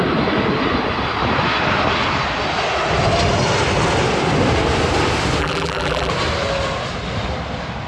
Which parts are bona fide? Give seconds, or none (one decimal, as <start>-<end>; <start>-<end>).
0.0-5.4; 6.1-7.9